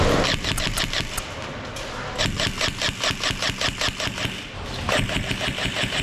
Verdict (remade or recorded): recorded